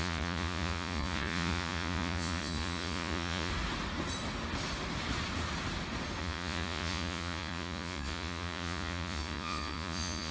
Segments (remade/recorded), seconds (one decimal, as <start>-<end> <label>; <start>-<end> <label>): 0.0-3.5 remade; 3.5-6.2 recorded; 6.2-10.3 remade